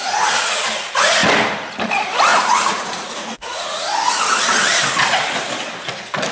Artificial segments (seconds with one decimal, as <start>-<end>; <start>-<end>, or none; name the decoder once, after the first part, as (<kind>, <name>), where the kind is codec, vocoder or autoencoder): 0.0-0.5 (vocoder, Vocos); 2.3-3.8